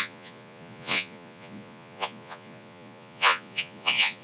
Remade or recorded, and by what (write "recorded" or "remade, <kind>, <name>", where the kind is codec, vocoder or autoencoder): remade, vocoder, Vocos